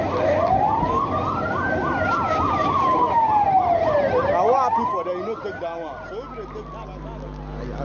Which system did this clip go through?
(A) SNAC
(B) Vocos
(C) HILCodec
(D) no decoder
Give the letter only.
D